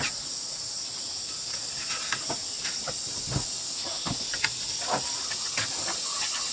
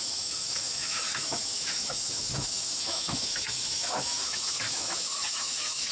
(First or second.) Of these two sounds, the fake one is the second